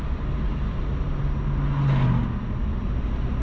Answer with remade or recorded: recorded